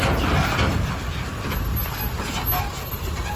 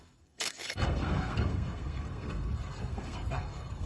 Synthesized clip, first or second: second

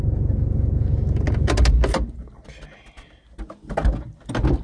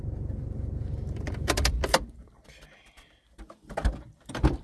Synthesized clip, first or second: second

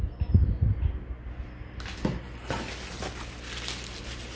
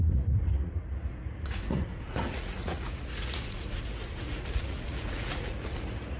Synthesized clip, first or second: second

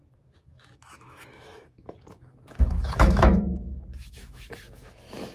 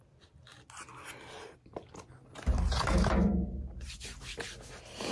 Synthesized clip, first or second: first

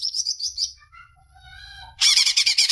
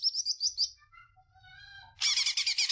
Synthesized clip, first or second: first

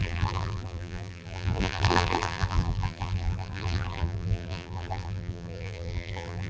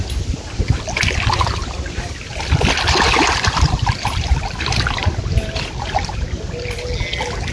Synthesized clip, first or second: first